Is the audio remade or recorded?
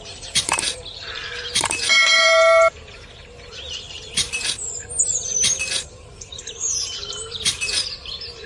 remade